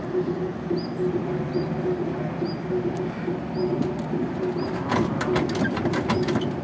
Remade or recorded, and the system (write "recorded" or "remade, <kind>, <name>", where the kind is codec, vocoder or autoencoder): recorded